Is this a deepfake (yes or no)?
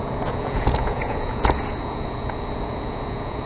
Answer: yes